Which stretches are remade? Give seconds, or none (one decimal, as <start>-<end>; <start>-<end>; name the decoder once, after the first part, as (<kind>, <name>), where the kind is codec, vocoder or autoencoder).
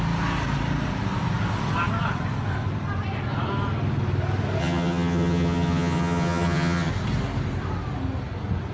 4.6-6.9 (vocoder, HiFi-GAN)